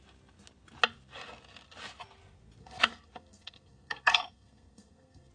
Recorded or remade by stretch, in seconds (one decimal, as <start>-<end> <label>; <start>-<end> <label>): 0.0-2.6 recorded; 2.6-5.3 remade

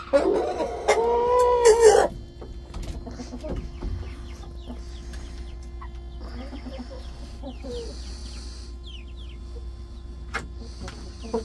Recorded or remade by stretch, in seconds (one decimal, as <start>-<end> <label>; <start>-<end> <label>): 0.0-11.4 recorded

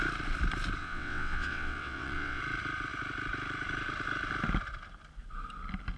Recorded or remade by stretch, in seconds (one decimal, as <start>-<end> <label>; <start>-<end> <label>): 0.0-0.8 recorded; 0.8-2.4 remade; 2.4-6.0 recorded